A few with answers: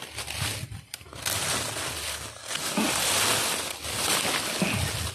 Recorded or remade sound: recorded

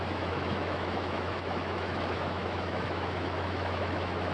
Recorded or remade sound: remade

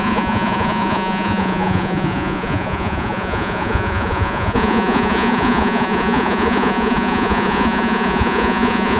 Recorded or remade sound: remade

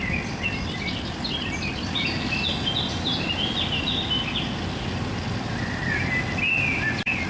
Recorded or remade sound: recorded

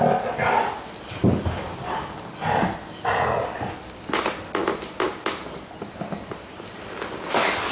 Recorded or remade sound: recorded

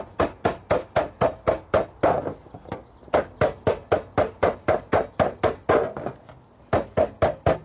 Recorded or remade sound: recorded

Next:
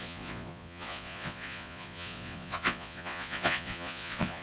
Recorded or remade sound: remade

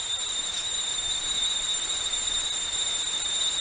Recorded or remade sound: remade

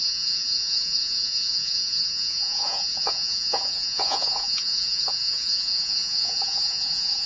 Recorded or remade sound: remade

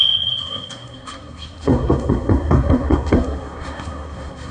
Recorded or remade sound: remade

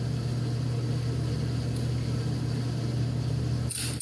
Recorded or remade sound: remade